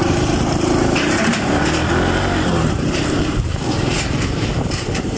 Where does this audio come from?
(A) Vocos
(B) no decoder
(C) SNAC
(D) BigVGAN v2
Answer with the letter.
D